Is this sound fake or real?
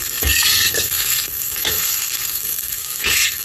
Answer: fake